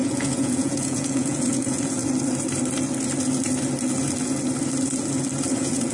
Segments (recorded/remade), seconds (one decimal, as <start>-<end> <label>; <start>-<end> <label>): 0.0-2.0 remade; 2.0-5.5 recorded; 5.5-5.9 remade